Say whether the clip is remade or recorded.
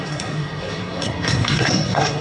remade